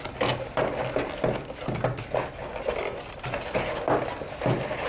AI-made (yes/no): no